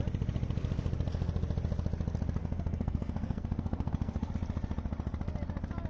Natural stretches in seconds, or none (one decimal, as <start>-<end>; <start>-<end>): 0.0-2.4; 4.3-5.9